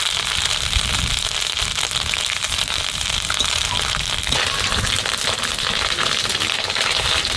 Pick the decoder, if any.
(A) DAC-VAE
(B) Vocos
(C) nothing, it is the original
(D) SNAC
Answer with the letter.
C